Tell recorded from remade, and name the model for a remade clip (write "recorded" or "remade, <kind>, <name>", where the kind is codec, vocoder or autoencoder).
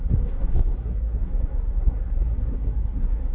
remade, codec, SNAC